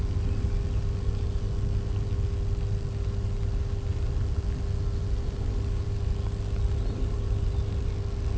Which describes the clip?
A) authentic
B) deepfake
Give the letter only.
A